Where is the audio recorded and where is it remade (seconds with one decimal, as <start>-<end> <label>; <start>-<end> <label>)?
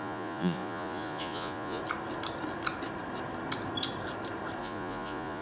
0.0-1.8 remade; 1.8-4.6 recorded; 4.6-5.4 remade